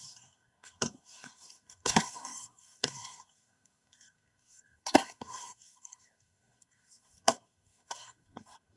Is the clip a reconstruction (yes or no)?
yes